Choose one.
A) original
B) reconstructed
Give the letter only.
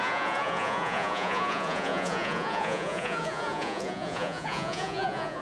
B